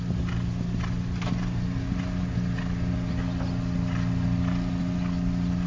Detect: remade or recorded recorded